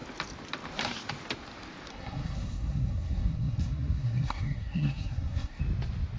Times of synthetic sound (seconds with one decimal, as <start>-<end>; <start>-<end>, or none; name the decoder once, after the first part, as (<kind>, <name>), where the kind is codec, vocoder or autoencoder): 1.9-5.6 (codec, SNAC)